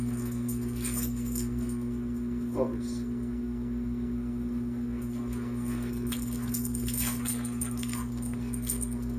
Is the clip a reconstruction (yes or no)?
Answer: yes